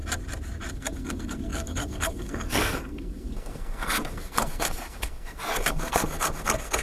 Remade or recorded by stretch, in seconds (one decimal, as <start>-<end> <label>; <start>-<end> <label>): 0.0-0.7 recorded; 0.7-6.8 remade